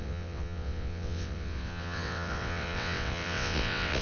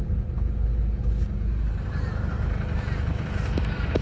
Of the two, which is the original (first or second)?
second